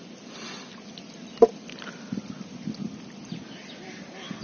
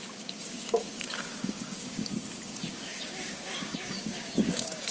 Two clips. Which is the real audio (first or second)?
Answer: first